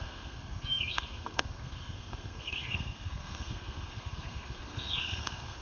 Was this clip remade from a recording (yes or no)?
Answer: yes